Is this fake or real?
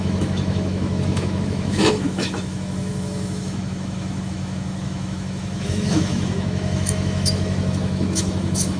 fake